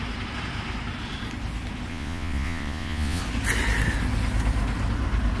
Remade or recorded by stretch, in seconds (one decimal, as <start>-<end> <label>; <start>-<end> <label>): 0.0-1.9 recorded; 1.9-3.2 remade; 3.2-5.4 recorded